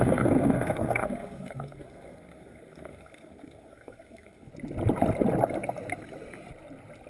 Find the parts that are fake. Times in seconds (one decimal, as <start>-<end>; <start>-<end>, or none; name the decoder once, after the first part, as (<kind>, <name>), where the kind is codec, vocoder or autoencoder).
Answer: 0.0-4.5 (codec, SNAC)

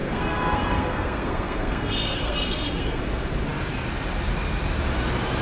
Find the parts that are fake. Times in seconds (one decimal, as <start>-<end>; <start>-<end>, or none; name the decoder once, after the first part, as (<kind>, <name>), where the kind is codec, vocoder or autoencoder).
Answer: 0.0-3.0 (codec, SNAC)

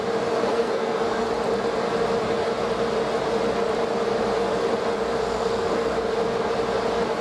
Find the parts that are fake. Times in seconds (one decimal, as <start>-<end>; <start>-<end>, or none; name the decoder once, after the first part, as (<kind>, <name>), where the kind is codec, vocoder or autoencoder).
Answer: 0.4-1.3 (codec, SNAC); 5.2-5.9

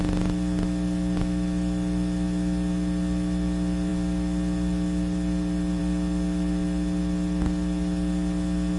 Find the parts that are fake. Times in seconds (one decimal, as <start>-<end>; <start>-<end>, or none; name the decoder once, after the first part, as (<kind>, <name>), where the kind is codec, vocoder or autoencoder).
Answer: none

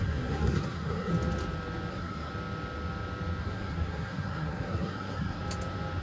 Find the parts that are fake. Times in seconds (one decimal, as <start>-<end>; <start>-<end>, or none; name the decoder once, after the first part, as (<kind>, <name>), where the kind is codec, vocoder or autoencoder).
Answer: 0.0-1.1 (codec, SNAC); 1.9-2.3; 3.4-5.4